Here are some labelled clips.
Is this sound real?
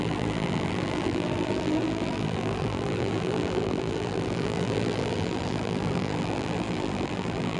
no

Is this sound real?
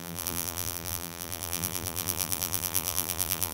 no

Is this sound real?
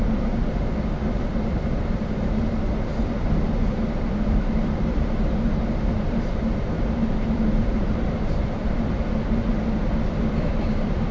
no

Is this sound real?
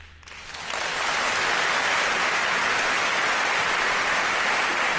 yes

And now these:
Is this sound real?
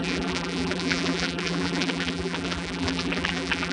no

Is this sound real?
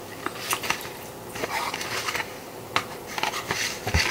yes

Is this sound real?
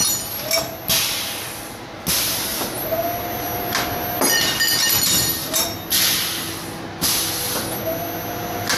yes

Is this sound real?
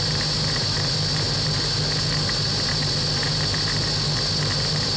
yes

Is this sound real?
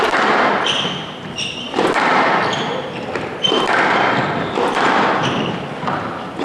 yes